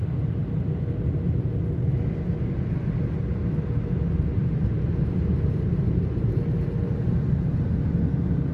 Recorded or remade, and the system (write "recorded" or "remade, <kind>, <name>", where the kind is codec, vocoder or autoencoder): recorded